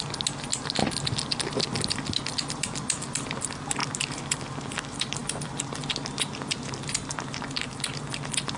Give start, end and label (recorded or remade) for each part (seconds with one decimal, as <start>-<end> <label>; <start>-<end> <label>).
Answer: 0.0-8.6 recorded